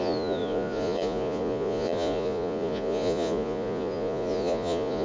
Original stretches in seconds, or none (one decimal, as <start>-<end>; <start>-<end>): none